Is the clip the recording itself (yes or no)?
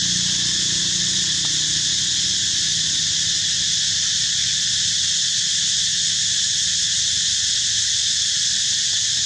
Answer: yes